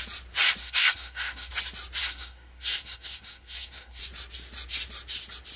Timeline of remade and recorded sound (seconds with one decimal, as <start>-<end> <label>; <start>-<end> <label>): 0.0-0.6 recorded; 0.6-1.5 remade; 1.5-2.0 recorded; 2.0-4.0 remade; 4.0-5.6 recorded